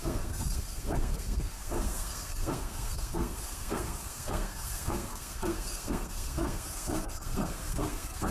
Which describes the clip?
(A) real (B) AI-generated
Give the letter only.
B